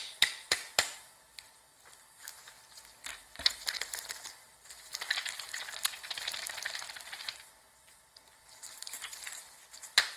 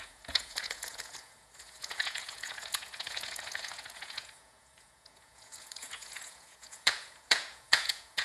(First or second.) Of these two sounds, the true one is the first